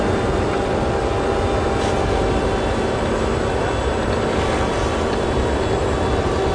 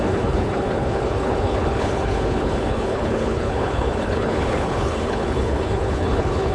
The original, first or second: first